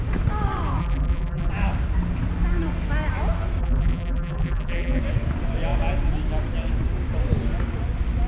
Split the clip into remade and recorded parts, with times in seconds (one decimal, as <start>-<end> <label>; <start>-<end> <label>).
0.0-0.8 recorded; 0.8-1.5 remade; 1.5-3.6 recorded; 3.6-5.0 remade; 5.0-8.3 recorded